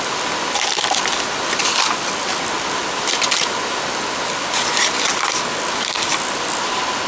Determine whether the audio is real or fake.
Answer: real